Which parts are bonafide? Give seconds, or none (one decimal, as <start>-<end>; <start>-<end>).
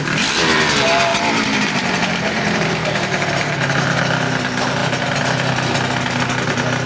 0.0-1.1; 4.0-6.9